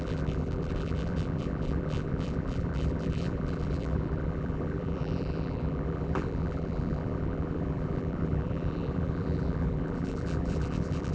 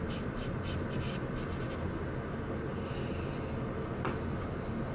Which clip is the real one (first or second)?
second